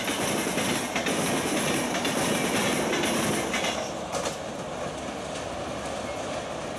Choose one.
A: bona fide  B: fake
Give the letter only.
A